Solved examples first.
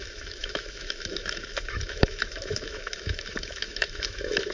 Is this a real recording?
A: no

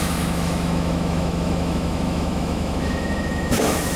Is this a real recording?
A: no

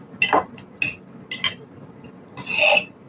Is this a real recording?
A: yes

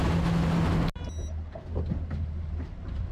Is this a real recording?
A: yes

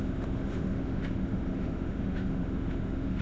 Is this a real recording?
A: no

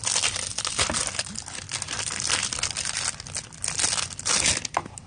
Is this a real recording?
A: yes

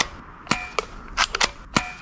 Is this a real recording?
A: yes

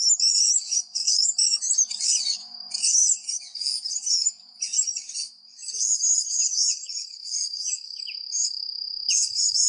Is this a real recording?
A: no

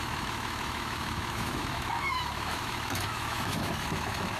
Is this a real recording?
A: no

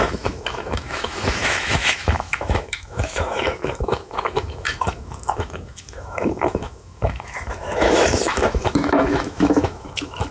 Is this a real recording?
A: no